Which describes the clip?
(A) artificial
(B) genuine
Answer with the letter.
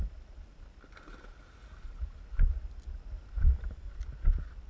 B